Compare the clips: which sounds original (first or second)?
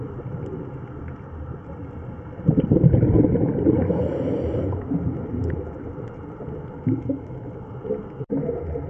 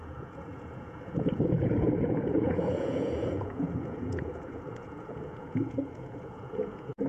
first